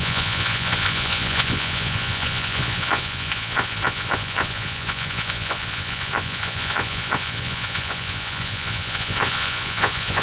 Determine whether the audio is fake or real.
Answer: fake